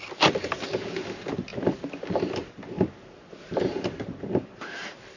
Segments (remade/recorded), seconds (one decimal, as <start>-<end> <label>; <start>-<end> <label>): 0.0-5.2 recorded